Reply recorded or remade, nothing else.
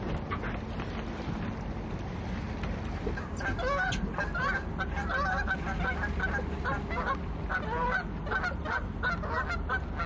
recorded